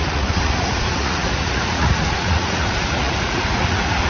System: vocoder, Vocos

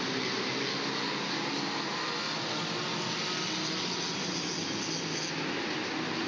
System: none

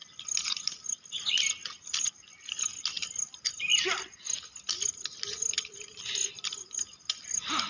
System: none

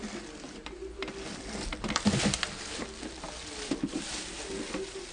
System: none